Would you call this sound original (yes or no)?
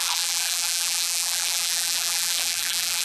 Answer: no